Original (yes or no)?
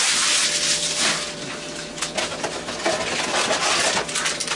no